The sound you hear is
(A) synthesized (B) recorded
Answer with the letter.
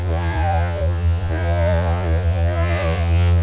A